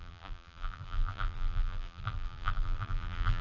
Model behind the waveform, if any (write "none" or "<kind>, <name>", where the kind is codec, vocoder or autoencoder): vocoder, BigVGAN v2